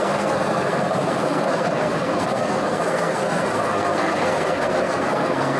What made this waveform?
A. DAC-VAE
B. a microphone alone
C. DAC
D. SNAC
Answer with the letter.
D